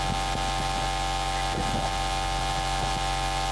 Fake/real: real